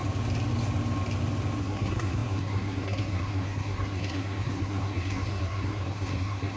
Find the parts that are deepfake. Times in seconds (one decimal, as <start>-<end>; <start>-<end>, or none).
1.6-6.6